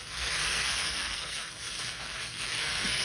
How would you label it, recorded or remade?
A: remade